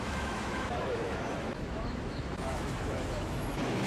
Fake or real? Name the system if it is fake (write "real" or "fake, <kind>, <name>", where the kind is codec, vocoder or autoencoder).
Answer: fake, autoencoder, DAC-VAE